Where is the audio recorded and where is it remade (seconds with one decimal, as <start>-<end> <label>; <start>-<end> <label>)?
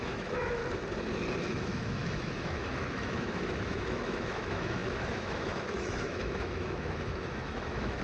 0.0-0.6 remade; 0.6-1.5 recorded; 1.5-8.0 remade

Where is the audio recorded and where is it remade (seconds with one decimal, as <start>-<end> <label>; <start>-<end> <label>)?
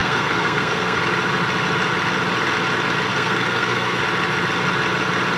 0.0-1.0 remade; 1.0-3.1 recorded; 3.1-4.0 remade; 4.0-5.4 recorded